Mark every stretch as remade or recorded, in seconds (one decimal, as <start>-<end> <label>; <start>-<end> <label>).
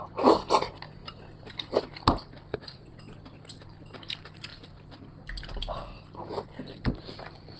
0.0-2.5 recorded; 2.5-3.0 remade; 3.0-7.6 recorded